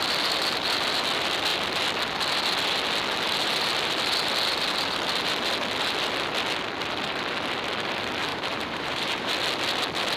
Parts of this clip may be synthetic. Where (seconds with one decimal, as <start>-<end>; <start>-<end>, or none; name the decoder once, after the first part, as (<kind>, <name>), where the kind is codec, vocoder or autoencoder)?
8.3-9.3 (vocoder, BigVGAN v2)